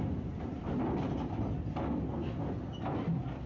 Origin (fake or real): real